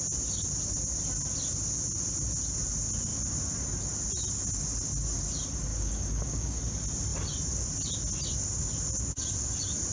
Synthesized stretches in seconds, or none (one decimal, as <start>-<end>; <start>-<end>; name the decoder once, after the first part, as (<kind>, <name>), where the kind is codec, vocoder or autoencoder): 5.7-6.6 (codec, DAC)